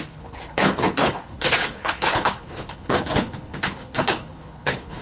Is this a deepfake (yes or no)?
yes